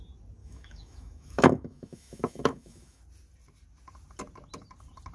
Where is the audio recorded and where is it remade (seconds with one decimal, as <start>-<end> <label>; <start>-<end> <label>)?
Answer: 0.0-0.4 recorded; 0.4-3.0 remade; 3.0-5.1 recorded

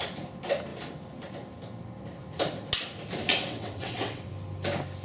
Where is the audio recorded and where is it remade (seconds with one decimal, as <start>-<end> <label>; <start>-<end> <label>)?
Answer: 0.0-3.3 recorded; 3.3-4.3 remade; 4.3-5.0 recorded